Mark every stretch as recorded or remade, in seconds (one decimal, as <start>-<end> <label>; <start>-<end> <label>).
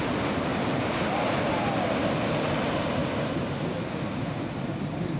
0.0-5.2 remade